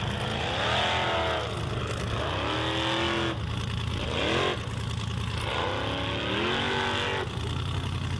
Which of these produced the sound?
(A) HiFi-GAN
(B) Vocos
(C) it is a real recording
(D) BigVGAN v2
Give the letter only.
C